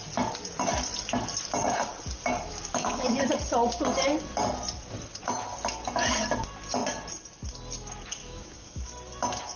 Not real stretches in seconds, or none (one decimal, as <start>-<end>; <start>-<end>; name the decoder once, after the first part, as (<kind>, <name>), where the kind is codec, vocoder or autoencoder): 2.5-3.2 (autoencoder, DAC-VAE); 8.2-8.9